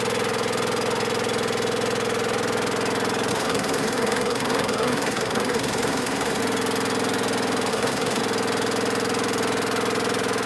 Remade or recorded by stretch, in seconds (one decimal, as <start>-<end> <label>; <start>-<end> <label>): 0.0-3.3 recorded; 3.3-6.4 remade; 6.4-7.7 recorded; 7.7-8.2 remade; 8.2-10.5 recorded